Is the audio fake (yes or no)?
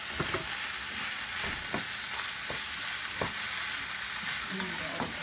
no